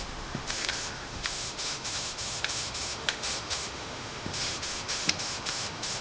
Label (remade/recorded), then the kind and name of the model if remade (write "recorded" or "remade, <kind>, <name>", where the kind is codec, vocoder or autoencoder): remade, autoencoder, DAC-VAE